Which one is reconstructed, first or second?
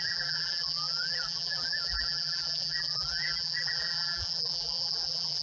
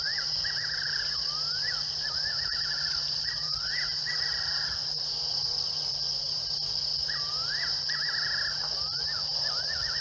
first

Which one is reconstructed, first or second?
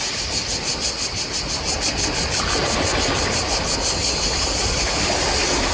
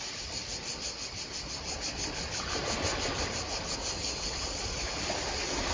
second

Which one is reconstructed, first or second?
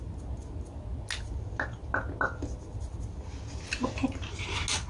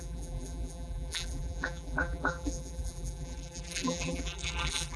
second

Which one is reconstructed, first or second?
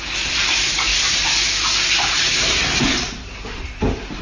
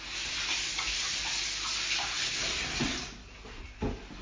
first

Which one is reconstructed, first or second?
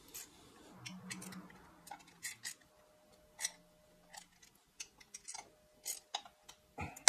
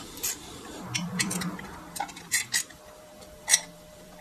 second